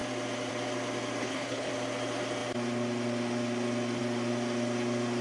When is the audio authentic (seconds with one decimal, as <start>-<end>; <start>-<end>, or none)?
0.0-1.2; 1.7-5.2